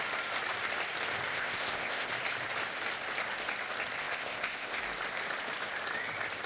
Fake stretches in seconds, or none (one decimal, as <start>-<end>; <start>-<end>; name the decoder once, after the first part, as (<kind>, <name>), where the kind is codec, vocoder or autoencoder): 1.3-2.1 (codec, ZipCodec); 4.0-4.8